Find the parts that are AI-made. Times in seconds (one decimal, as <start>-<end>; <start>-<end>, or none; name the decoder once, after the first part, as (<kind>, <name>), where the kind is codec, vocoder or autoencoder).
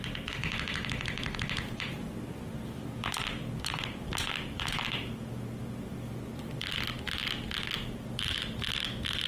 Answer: 1.9-2.5 (vocoder, BigVGAN v2)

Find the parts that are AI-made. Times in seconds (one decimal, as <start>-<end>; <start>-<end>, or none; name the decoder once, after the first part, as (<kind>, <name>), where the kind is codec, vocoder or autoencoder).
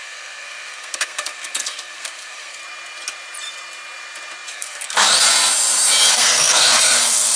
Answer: 0.0-2.6 (codec, SNAC); 4.5-5.1; 6.1-7.4